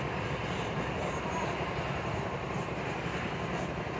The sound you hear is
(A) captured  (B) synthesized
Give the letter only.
A